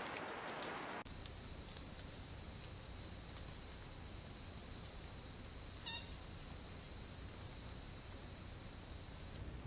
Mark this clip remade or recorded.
recorded